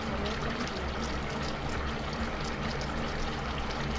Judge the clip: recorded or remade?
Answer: recorded